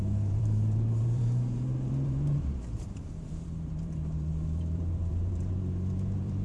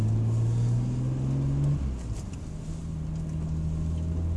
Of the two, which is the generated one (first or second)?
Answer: first